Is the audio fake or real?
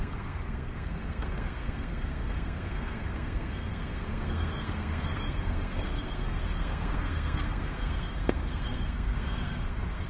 fake